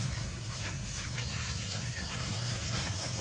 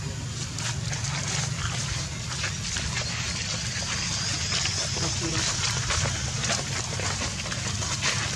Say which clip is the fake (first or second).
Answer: first